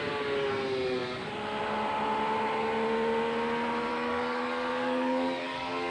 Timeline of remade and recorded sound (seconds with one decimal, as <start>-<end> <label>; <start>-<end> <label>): 0.0-3.9 recorded; 3.9-5.9 remade